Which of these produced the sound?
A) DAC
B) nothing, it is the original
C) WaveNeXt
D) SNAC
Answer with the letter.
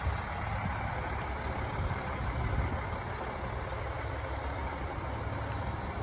B